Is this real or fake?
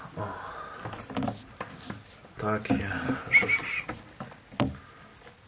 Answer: real